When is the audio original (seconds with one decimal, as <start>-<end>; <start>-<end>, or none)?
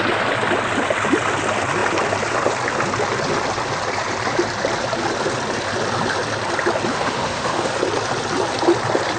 0.0-6.9; 7.7-9.2